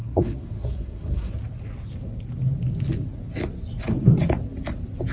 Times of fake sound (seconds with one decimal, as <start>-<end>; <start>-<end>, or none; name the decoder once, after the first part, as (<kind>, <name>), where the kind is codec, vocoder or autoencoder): 0.0-1.3 (codec, SNAC)